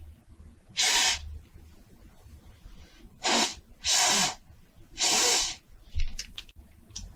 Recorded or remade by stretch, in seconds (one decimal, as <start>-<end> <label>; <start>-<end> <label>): 0.0-3.5 recorded; 3.5-5.6 remade; 5.6-7.2 recorded